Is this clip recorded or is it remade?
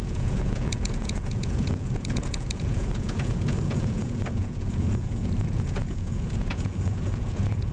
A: remade